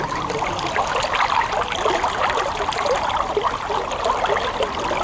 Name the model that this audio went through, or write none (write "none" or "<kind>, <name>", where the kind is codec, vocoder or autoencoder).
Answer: none